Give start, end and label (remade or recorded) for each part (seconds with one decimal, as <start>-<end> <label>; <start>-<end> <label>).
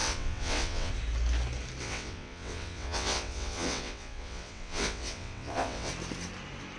0.0-0.9 remade; 0.9-1.8 recorded; 1.8-5.9 remade; 5.9-6.8 recorded